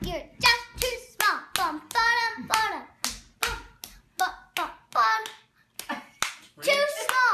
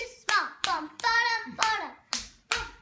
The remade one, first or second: second